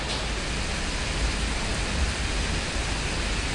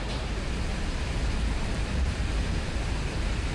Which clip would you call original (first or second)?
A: first